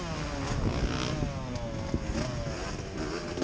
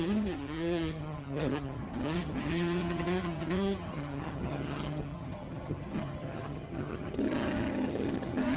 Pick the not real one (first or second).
second